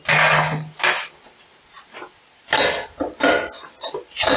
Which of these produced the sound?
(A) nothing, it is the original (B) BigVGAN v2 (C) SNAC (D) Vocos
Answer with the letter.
A